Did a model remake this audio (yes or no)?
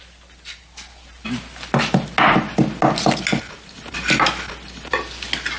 no